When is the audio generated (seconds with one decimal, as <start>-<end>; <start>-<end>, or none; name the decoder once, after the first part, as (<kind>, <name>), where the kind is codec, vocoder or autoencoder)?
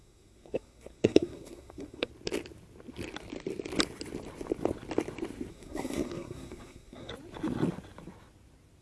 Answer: 0.0-2.1 (codec, SNAC); 5.5-7.1